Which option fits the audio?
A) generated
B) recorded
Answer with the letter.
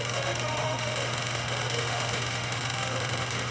A